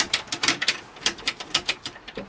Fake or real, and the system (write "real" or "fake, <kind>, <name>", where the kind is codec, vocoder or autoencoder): fake, vocoder, BigVGAN v2